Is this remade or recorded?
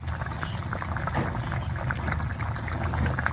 recorded